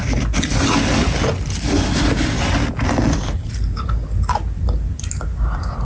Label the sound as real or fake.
real